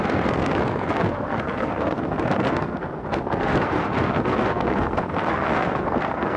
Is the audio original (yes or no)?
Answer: no